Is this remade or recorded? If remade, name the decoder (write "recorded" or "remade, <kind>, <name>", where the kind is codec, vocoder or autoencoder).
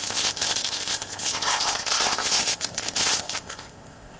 remade, codec, ZipCodec